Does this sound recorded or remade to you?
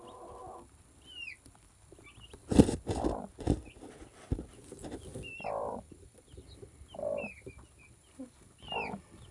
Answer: recorded